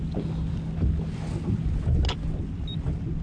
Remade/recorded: recorded